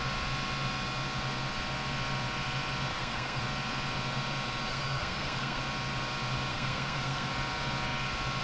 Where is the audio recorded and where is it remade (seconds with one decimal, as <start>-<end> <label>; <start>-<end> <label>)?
0.0-2.9 recorded; 2.9-3.4 remade; 3.4-4.7 recorded; 4.7-5.6 remade; 5.6-6.5 recorded; 6.5-7.3 remade; 7.3-8.4 recorded